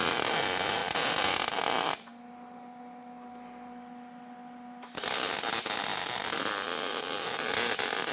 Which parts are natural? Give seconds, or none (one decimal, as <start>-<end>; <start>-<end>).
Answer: 0.0-8.1